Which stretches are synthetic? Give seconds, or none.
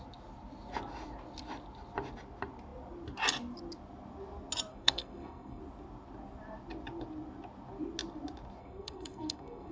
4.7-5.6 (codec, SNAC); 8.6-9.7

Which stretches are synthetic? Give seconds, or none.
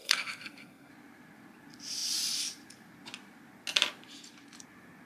0.0-0.9 (codec, SNAC)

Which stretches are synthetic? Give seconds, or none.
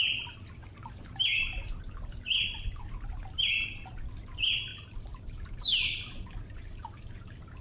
none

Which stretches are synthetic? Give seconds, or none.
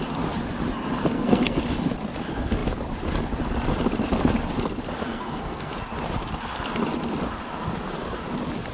1.0-1.6 (codec, SNAC); 5.0-5.7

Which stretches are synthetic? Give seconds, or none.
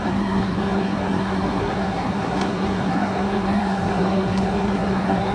0.0-5.3 (codec, SNAC)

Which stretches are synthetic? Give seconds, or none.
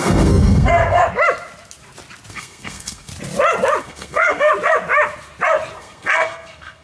0.0-1.0 (codec, SNAC); 2.3-3.1; 3.8-4.5; 5.8-6.8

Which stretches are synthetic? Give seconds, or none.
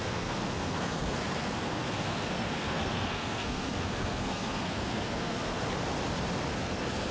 0.0-5.6 (codec, SNAC); 6.5-7.1